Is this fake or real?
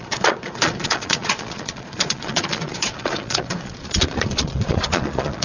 fake